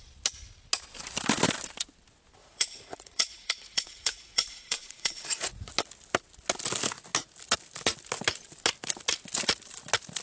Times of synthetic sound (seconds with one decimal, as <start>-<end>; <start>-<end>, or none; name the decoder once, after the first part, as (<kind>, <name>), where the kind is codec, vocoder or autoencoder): 2.4-5.7 (vocoder, Vocos)